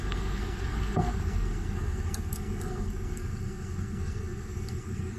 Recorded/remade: remade